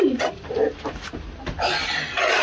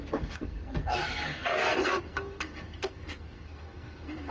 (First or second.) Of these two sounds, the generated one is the second